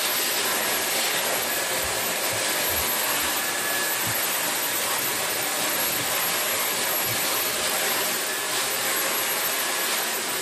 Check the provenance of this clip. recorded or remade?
recorded